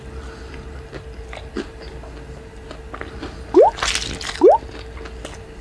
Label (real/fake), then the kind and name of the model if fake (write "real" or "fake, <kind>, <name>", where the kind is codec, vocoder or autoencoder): real